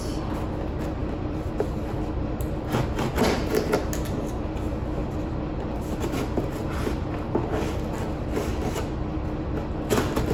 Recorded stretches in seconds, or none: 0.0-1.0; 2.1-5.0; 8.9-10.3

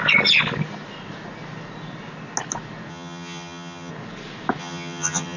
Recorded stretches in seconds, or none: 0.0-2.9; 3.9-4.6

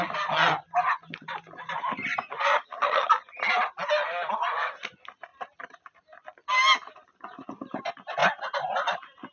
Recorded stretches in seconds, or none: 0.0-2.5; 3.1-9.3

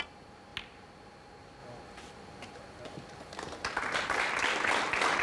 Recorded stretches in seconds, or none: 0.0-5.2

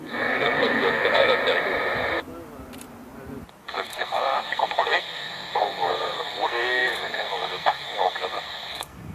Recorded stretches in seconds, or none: 1.4-3.6

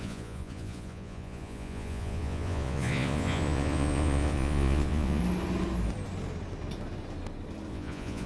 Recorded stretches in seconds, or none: 5.2-7.7

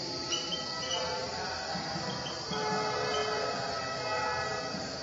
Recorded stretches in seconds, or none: 0.0-3.2; 3.7-5.0